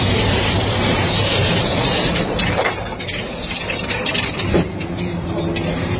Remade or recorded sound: remade